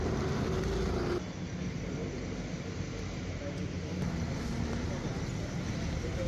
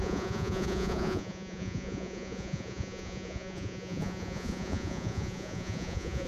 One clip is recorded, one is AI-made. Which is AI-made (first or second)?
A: second